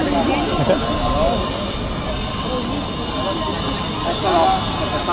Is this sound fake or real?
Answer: real